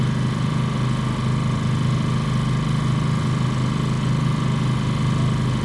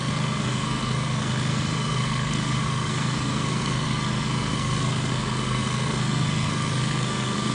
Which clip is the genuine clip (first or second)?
first